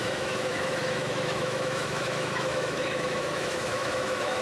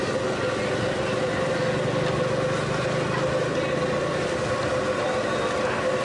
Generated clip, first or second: first